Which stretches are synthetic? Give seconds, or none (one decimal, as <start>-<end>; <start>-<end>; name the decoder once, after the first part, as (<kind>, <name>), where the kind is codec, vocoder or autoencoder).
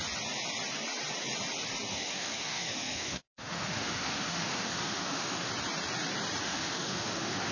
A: 1.9-5.5 (autoencoder, DAC-VAE); 6.4-7.5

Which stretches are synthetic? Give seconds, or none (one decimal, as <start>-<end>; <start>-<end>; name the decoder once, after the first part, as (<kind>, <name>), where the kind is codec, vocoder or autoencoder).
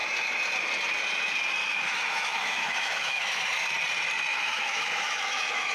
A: 1.6-3.4 (autoencoder, DAC-VAE); 4.3-5.7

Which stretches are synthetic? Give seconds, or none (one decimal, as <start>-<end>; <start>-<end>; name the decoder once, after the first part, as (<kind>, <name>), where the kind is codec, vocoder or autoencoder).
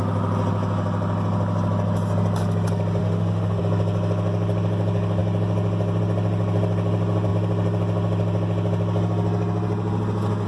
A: 3.0-3.6 (autoencoder, DAC-VAE)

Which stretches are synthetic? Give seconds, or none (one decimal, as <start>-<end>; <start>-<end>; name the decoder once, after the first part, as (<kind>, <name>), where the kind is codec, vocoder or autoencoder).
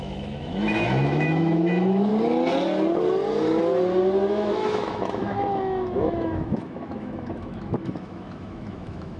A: 0.0-2.1 (autoencoder, DAC-VAE); 4.3-9.2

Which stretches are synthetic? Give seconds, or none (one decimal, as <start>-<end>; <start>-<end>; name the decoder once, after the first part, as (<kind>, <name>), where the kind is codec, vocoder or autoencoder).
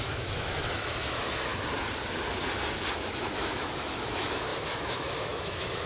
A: 0.0-1.5 (autoencoder, DAC-VAE); 3.1-5.9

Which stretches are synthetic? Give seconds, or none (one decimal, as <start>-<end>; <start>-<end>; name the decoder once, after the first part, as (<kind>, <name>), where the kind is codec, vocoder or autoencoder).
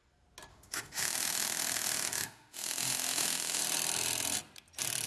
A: 0.5-3.6 (autoencoder, DAC-VAE)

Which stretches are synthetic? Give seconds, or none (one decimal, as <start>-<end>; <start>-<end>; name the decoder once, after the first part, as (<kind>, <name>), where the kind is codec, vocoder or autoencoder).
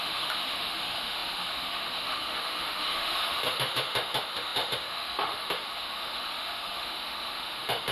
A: 0.0-7.9 (autoencoder, DAC-VAE)